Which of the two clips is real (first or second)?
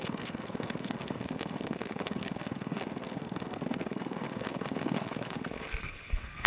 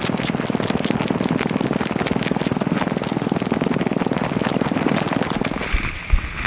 second